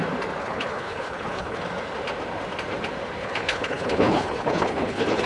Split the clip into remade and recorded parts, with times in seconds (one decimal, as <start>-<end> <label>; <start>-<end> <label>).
0.0-0.4 recorded; 0.4-1.6 remade; 1.6-3.2 recorded; 3.2-5.3 remade

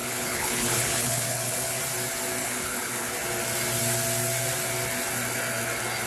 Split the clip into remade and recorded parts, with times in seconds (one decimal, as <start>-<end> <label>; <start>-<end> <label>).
0.0-1.8 remade; 1.8-2.4 recorded; 2.4-3.1 remade; 3.1-6.1 recorded

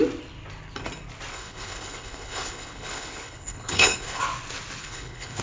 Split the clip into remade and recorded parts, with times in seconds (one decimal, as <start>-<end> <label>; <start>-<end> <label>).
0.0-1.3 recorded; 1.3-4.2 remade; 4.2-4.8 recorded; 4.8-5.4 remade